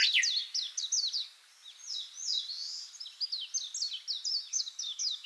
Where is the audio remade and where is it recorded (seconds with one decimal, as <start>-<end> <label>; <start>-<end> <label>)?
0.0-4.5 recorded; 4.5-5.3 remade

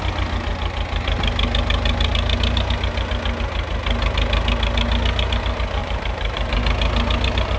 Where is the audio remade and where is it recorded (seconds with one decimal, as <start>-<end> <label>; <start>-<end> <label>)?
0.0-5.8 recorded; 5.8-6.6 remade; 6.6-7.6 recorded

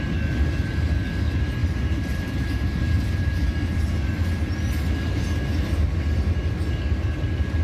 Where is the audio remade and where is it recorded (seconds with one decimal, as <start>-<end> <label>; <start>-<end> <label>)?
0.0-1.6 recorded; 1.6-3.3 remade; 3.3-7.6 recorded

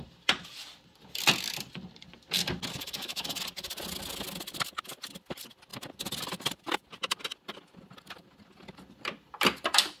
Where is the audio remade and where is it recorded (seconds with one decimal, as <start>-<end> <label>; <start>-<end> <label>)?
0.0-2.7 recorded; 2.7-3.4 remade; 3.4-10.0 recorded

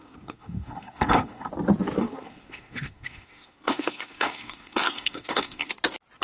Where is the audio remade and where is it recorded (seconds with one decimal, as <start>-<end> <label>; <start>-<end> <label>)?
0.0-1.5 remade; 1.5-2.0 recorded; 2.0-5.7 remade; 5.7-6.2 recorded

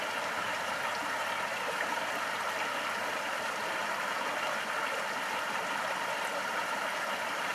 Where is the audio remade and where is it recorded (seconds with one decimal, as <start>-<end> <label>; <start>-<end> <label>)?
0.0-7.5 recorded

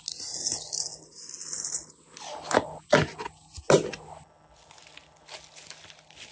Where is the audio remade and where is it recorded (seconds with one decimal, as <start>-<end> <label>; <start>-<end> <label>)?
0.0-6.3 recorded